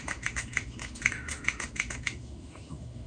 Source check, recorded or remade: remade